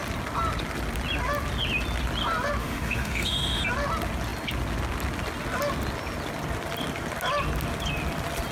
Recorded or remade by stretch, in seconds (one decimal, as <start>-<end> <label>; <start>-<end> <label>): 0.0-2.6 recorded; 2.6-3.6 remade; 3.6-8.5 recorded